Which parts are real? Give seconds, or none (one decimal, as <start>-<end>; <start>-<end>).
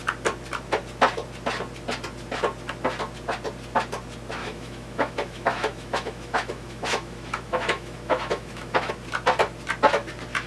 0.0-4.4; 8.9-10.5